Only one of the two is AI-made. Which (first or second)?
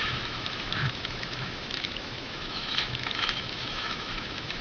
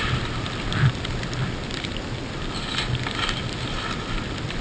first